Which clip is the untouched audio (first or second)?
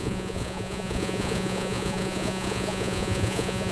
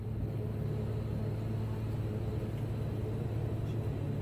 second